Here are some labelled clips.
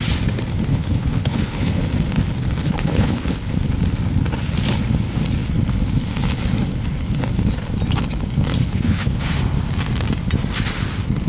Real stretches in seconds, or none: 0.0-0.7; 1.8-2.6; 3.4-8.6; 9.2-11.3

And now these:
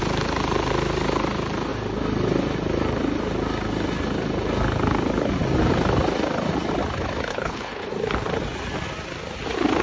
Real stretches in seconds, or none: 0.0-7.3; 7.9-9.8

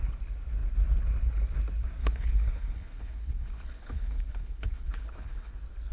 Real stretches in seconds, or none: 0.0-2.0; 5.5-5.9

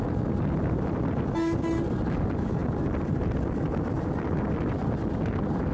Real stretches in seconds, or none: 0.0-5.7

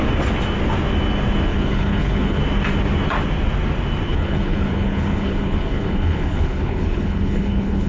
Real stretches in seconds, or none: 0.0-1.5; 2.4-4.1

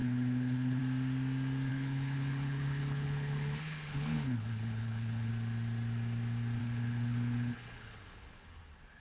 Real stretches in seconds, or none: 0.8-1.7; 5.3-6.6; 8.6-9.0

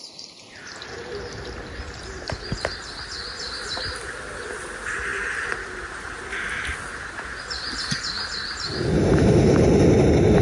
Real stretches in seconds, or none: 0.0-10.4

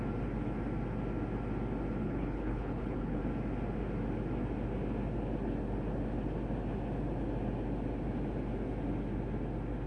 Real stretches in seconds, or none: 0.0-2.0; 3.2-9.9